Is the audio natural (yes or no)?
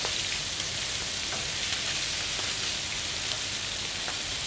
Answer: yes